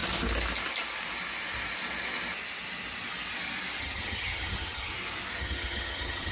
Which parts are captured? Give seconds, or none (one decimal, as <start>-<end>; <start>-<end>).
0.0-3.8; 4.9-5.4